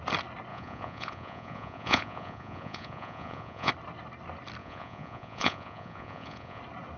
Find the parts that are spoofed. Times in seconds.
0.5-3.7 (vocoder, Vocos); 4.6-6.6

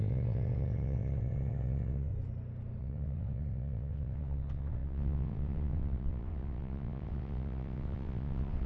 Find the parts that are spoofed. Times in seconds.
0.0-2.1 (vocoder, WaveNeXt); 2.8-8.7

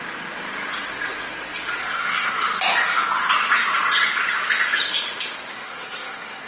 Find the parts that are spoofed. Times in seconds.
1.8-2.4 (codec, SNAC); 5.5-6.5

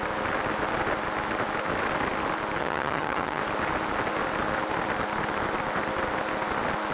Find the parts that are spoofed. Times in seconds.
2.6-3.4 (vocoder, HiFi-GAN)

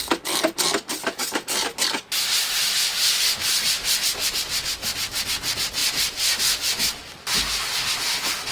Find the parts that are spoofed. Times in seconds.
none

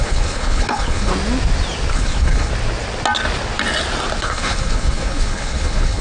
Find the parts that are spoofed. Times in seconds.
0.0-1.1 (codec, HILCodec); 1.9-2.5; 4.2-6.0